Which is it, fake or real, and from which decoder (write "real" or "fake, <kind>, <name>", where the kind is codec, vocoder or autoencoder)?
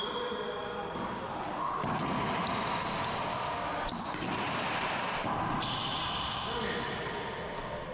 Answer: real